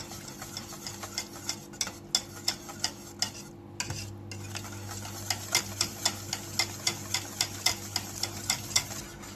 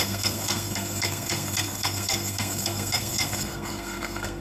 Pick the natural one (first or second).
first